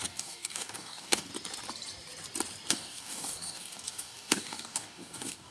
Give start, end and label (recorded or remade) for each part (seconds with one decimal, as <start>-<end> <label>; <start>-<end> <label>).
0.0-1.3 remade; 1.3-2.7 recorded; 2.7-5.5 remade